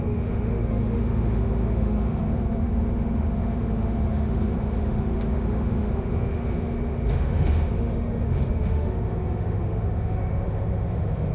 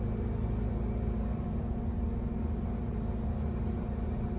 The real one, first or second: second